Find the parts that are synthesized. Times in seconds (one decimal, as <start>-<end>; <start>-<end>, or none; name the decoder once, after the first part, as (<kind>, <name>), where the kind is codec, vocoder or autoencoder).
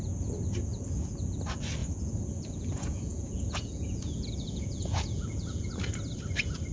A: 0.7-1.4 (vocoder, Vocos); 1.8-5.7